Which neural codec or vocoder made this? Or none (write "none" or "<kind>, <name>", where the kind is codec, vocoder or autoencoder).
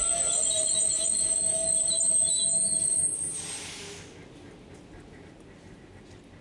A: none